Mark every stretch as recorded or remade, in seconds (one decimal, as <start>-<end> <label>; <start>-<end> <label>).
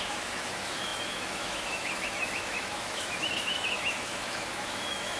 0.0-5.2 remade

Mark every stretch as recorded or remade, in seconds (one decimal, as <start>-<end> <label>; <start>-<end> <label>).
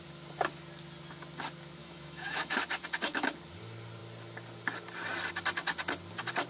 0.0-1.8 recorded; 1.8-2.6 remade; 2.6-6.5 recorded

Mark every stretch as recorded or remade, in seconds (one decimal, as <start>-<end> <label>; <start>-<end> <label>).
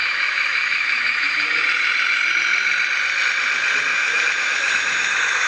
0.0-1.6 remade; 1.6-3.9 recorded; 3.9-5.5 remade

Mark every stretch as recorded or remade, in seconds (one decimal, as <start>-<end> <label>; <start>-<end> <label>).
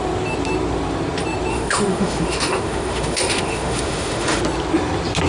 0.0-1.5 recorded; 1.5-4.4 remade; 4.4-5.3 recorded